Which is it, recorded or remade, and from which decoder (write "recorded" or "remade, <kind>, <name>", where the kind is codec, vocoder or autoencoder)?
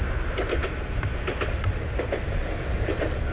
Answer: recorded